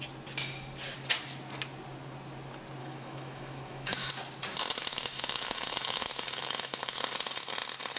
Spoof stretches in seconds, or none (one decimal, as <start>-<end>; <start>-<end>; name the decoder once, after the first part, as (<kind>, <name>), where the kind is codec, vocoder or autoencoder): 2.8-4.1 (autoencoder, DAC-VAE); 4.9-7.0